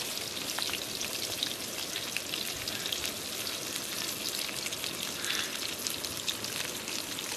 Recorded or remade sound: recorded